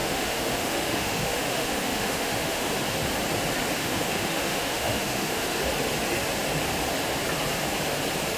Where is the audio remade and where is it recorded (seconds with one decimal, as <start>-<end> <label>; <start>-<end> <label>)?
0.0-2.7 remade; 2.7-3.8 recorded; 3.8-5.6 remade; 5.6-8.4 recorded